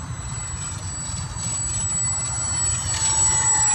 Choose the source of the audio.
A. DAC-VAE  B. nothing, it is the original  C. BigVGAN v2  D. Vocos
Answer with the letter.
B